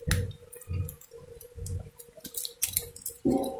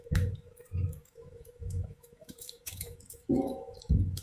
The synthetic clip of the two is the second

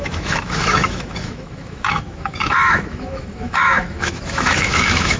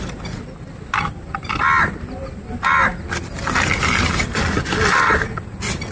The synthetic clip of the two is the first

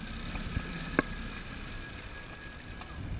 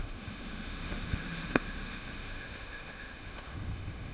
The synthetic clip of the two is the second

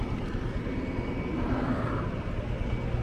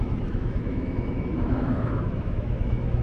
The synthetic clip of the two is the second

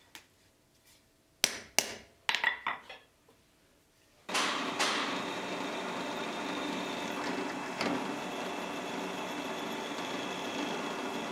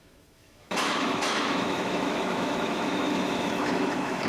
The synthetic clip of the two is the second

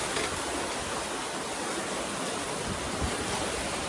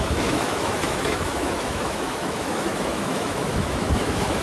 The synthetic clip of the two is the second